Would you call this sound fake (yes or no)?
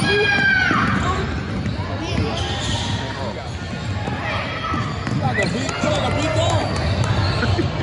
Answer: no